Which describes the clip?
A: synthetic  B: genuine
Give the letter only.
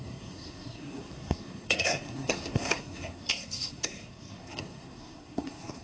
A